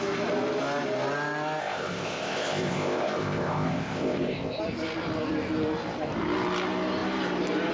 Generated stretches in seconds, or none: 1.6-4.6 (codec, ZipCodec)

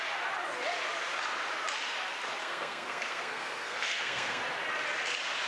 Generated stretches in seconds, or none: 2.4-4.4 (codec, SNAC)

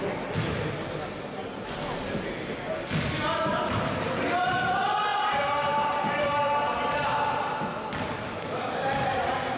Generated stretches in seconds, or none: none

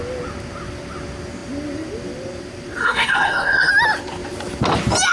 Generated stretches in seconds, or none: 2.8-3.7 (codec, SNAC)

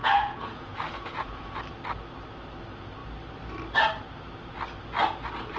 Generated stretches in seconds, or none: 0.0-1.6 (vocoder, Vocos)

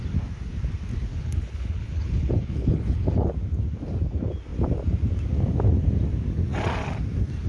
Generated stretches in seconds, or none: 1.1-3.3 (codec, HILCodec)

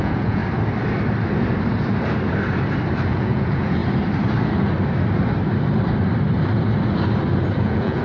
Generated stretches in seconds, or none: 0.0-0.4 (vocoder, Vocos); 3.1-3.8; 7.6-8.0